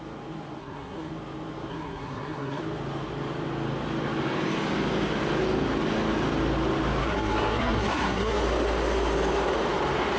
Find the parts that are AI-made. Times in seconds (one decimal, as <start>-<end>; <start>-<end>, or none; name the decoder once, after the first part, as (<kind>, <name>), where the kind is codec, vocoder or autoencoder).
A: 0.6-1.1 (codec, SNAC); 1.7-2.6; 7.0-8.4